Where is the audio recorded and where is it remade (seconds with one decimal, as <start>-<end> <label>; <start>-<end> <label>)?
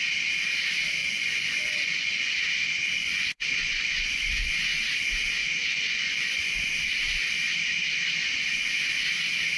0.0-1.0 recorded; 1.0-2.3 remade; 2.3-2.8 recorded; 2.8-4.5 remade; 4.5-5.7 recorded; 5.7-6.7 remade; 6.7-9.6 recorded